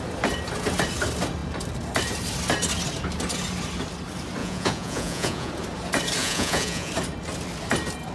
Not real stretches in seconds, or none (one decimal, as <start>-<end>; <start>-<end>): 4.4-5.5; 6.2-6.9